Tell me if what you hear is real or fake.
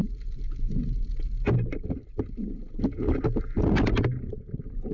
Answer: real